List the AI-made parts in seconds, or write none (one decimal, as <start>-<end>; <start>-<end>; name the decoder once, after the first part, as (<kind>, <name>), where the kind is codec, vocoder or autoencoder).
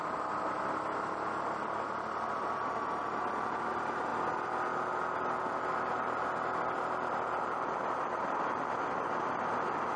none